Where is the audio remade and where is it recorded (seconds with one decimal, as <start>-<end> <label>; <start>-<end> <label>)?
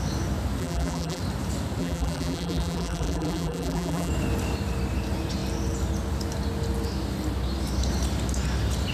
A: 0.0-0.6 recorded; 0.6-1.2 remade; 1.2-1.8 recorded; 1.8-4.1 remade; 4.1-8.9 recorded